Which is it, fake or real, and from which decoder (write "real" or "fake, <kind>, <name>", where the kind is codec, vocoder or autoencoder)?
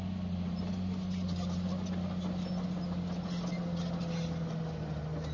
real